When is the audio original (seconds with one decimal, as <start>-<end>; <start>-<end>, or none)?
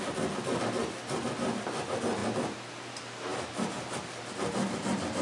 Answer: 0.0-5.2